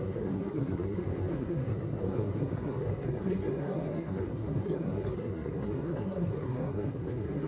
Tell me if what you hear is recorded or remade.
remade